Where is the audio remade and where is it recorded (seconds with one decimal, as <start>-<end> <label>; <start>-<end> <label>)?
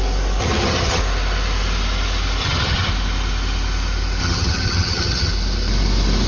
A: 0.0-0.4 recorded; 0.4-1.0 remade; 1.0-2.4 recorded; 2.4-2.9 remade; 2.9-4.2 recorded; 4.2-5.3 remade; 5.3-6.3 recorded